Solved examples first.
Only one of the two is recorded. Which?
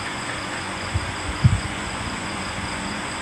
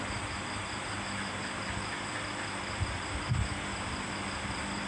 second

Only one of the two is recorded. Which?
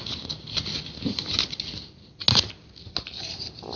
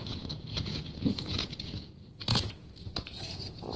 first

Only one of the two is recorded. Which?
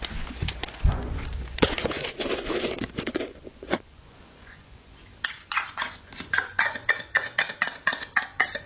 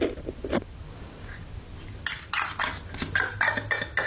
second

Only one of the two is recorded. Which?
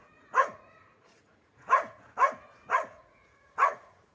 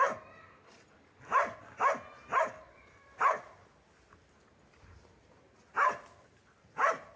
second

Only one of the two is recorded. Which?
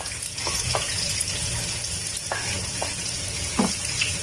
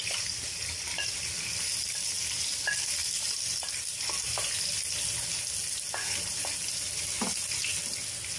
second